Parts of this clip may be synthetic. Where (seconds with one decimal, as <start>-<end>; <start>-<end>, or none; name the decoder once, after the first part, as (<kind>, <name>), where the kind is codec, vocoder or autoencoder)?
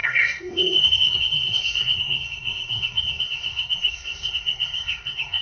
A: 0.0-5.4 (codec, SNAC)